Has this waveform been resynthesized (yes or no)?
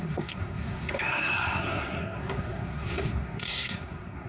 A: yes